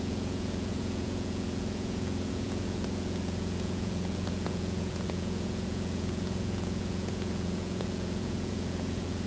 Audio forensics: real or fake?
fake